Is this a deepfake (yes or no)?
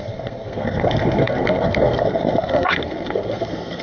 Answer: yes